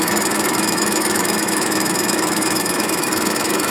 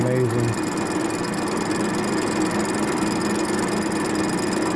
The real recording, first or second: second